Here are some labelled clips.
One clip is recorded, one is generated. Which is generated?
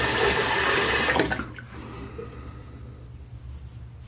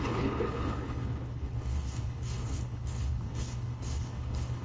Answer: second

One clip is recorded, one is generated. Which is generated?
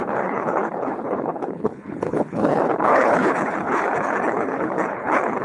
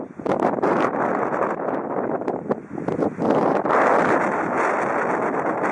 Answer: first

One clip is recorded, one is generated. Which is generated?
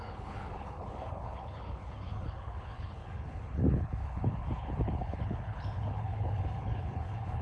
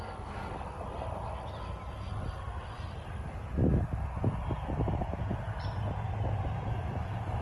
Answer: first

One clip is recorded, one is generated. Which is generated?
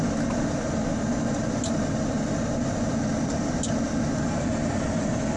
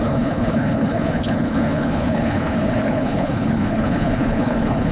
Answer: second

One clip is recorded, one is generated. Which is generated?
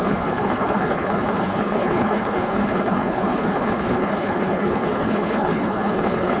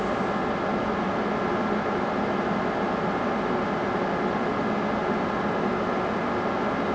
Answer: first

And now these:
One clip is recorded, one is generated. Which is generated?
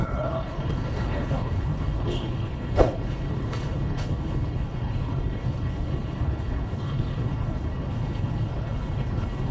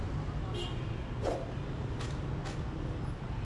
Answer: first